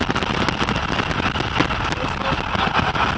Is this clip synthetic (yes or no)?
no